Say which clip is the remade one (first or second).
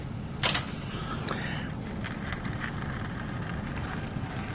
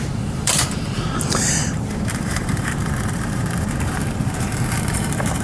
second